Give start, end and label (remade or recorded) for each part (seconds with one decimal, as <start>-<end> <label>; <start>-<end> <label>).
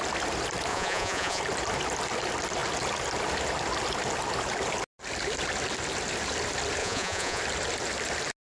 0.0-0.7 recorded; 0.7-1.4 remade; 1.4-6.8 recorded; 6.8-7.4 remade; 7.4-8.5 recorded